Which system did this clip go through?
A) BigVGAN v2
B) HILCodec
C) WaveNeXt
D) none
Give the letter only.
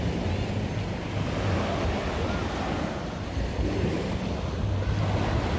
D